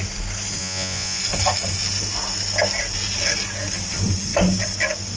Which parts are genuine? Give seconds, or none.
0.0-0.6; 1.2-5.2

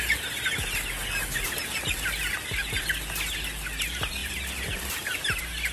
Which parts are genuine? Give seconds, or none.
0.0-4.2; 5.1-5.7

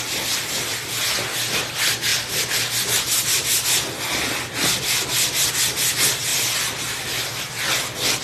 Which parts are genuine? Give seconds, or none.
0.0-8.2

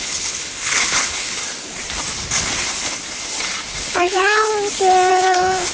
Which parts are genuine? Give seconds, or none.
1.4-3.9; 4.5-5.1